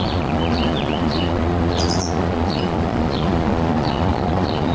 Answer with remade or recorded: remade